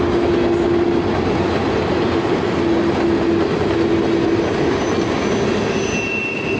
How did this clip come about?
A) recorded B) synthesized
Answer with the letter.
A